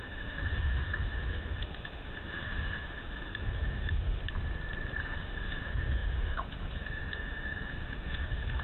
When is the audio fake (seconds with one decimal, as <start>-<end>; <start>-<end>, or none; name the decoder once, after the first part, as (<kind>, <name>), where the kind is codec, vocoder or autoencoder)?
0.0-4.2 (autoencoder, DAC-VAE); 5.0-8.6

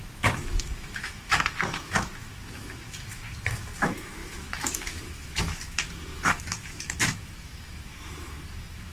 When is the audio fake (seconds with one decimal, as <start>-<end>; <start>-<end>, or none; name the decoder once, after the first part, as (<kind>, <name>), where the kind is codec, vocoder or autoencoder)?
0.0-8.9 (autoencoder, DAC-VAE)

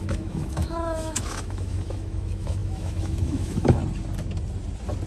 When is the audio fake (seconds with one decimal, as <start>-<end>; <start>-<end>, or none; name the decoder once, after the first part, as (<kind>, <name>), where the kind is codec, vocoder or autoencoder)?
0.0-3.8 (autoencoder, DAC-VAE)

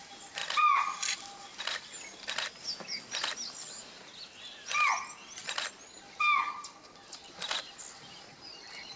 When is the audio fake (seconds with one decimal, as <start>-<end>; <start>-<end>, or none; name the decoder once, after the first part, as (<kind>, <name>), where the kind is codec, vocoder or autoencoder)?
none